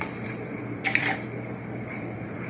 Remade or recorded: remade